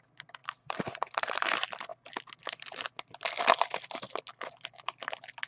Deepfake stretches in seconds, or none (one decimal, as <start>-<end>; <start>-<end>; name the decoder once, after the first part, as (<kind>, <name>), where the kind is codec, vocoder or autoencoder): 0.4-1.5 (vocoder, BigVGAN v2)